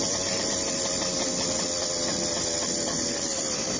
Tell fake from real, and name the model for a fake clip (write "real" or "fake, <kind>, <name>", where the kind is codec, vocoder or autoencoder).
real